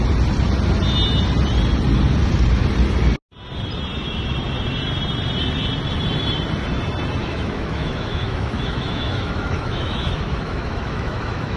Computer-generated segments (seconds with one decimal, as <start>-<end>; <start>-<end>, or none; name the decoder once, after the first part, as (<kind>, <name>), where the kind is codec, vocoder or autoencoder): 7.2-11.6 (autoencoder, DAC-VAE)